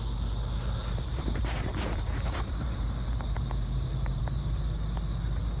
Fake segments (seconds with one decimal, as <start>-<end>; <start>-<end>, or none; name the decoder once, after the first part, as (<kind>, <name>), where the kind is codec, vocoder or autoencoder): 0.8-4.2 (vocoder, BigVGAN v2)